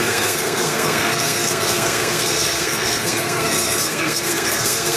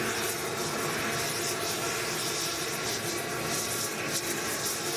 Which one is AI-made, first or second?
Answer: first